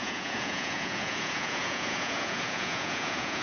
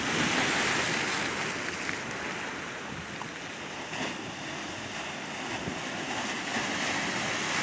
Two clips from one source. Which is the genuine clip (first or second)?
second